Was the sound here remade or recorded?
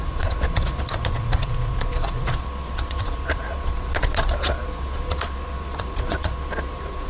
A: remade